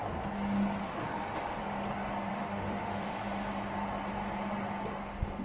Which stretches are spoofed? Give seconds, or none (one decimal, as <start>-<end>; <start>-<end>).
0.8-1.6; 2.3-3.2